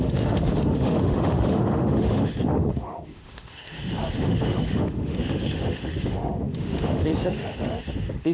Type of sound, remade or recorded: remade